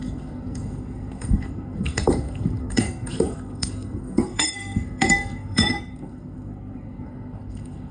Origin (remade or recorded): remade